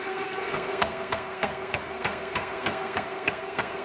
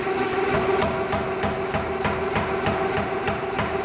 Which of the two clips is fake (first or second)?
first